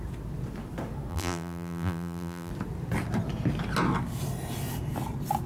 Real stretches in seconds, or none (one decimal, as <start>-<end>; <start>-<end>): 0.0-1.1; 2.5-5.5